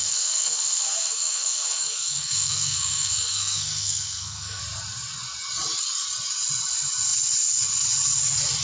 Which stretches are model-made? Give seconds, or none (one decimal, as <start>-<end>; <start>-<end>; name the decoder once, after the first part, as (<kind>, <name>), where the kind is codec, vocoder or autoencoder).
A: 0.0-4.6 (codec, SNAC)